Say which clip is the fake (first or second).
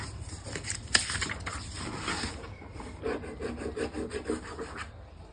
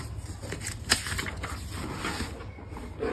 first